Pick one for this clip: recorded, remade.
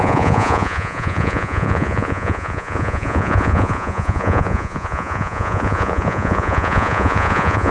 remade